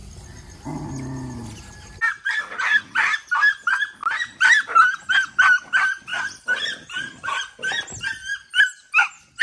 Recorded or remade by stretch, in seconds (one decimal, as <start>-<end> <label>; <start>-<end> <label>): 0.0-4.0 recorded; 4.0-5.1 remade; 5.1-6.1 recorded; 6.1-7.8 remade; 7.8-9.4 recorded